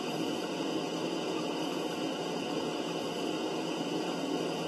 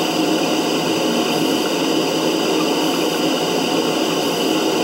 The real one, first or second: second